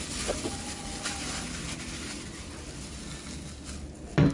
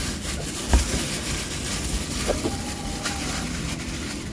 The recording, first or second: first